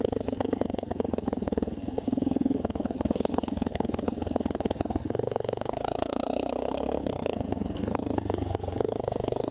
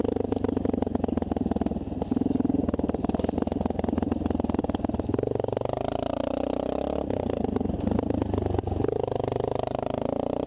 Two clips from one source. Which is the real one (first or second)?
second